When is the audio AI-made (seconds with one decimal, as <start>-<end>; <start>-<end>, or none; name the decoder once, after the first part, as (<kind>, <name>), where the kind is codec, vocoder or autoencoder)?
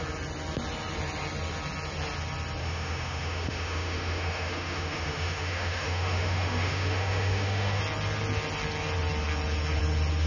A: 2.6-7.8 (autoencoder, DAC-VAE)